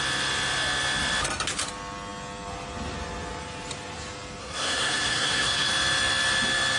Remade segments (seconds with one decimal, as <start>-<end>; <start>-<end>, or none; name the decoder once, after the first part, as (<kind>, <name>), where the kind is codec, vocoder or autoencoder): 4.4-5.7 (codec, SNAC)

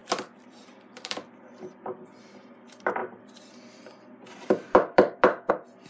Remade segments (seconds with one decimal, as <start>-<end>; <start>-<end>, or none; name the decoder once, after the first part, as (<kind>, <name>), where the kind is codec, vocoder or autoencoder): 0.0-1.5 (vocoder, BigVGAN v2); 3.0-5.5

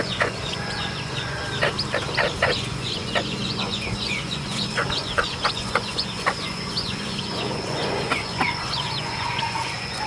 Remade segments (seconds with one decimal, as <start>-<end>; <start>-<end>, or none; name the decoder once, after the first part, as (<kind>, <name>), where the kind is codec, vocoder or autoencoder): 0.0-1.4 (vocoder, Vocos); 2.4-10.1

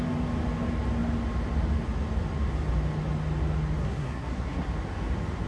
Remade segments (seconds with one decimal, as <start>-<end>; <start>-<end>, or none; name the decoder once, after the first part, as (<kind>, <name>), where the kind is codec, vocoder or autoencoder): 3.8-4.7 (codec, SNAC)